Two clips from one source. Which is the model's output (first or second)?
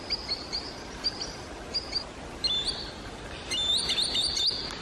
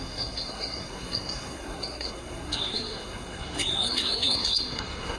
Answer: second